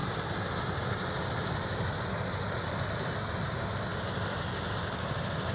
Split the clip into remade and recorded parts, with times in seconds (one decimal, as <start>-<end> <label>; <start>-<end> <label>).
0.0-5.5 recorded